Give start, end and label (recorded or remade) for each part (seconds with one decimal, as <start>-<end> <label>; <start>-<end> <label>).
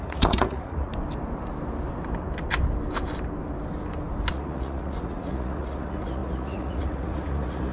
0.0-0.9 remade; 0.9-4.3 recorded; 4.3-7.7 remade